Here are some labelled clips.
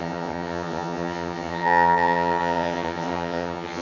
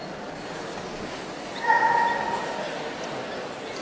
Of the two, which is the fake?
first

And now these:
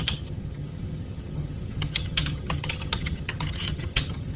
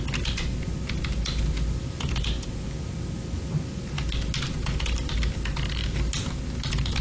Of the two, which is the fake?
first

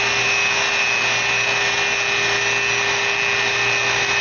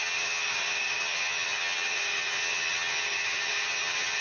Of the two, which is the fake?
second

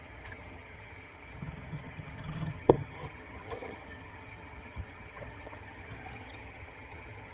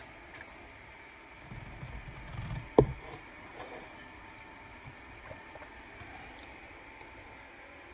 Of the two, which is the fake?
first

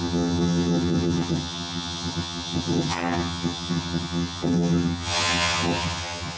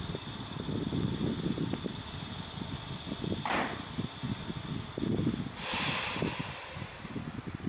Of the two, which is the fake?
first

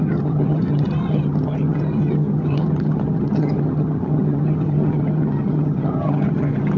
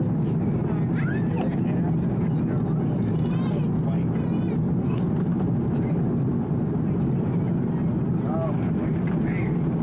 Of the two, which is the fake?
first